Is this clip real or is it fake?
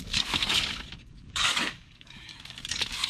fake